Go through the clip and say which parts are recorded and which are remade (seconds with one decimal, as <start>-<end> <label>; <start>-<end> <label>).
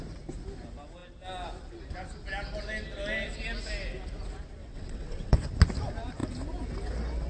0.0-4.6 recorded; 4.6-5.4 remade; 5.4-7.3 recorded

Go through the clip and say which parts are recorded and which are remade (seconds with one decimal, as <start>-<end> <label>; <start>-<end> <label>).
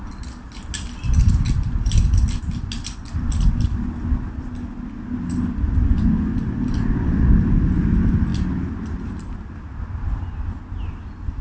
0.0-11.4 recorded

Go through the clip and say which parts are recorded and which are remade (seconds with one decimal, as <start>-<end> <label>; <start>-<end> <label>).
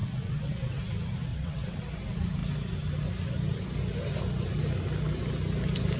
0.0-0.8 remade; 0.8-1.3 recorded; 1.3-1.9 remade; 1.9-6.0 recorded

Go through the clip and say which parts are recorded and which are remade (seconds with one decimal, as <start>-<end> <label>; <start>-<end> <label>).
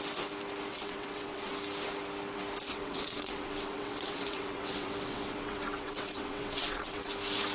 0.0-0.7 recorded; 0.7-1.5 remade; 1.5-2.7 recorded; 2.7-7.1 remade; 7.1-7.5 recorded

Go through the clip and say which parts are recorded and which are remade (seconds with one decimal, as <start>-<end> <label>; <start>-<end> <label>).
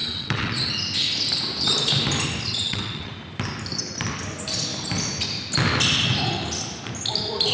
0.0-0.7 remade; 0.7-2.5 recorded; 2.5-3.1 remade; 3.1-7.5 recorded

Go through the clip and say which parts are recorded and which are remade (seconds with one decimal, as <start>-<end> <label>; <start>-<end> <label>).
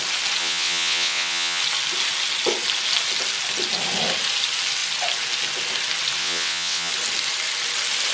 0.0-0.4 recorded; 0.4-1.6 remade; 1.6-6.2 recorded; 6.2-6.9 remade; 6.9-8.1 recorded